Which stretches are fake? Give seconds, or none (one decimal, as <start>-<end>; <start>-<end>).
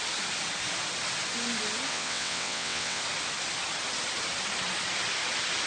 1.9-3.0